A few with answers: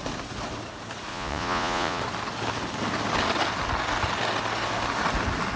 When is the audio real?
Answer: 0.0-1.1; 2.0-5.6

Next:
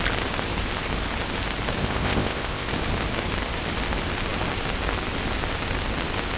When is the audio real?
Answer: 0.0-1.8; 2.7-6.4

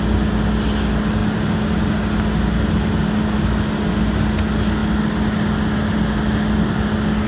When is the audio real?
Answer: 0.0-7.3

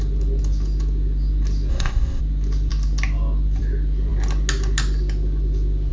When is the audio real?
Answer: 0.0-1.7; 2.2-5.9

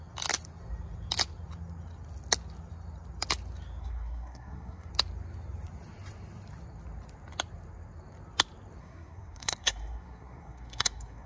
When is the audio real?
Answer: 0.0-3.8; 4.9-8.8

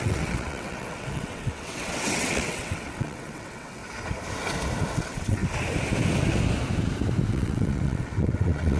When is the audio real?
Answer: 3.8-5.0; 5.4-7.3

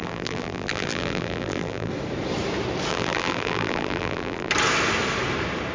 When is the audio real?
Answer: 1.9-2.9; 4.5-5.7

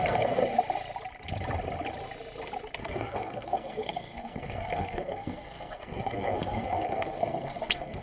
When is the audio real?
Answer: 0.4-2.8